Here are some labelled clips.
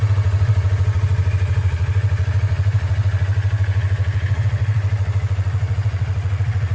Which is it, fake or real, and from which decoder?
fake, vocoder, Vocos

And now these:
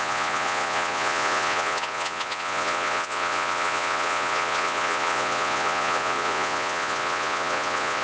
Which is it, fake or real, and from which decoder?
fake, vocoder, Vocos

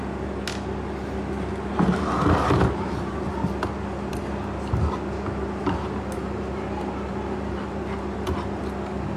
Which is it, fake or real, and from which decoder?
real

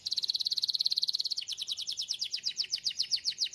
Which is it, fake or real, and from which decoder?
fake, vocoder, Vocos